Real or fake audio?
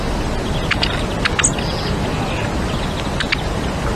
real